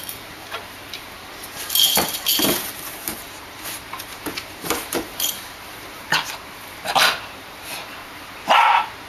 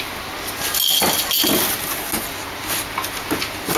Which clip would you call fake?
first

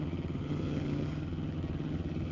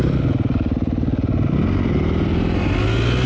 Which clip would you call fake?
first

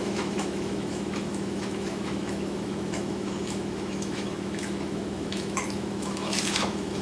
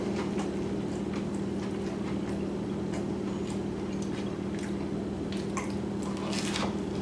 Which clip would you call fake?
first